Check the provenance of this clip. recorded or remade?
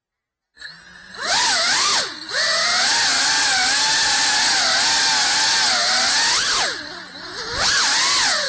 recorded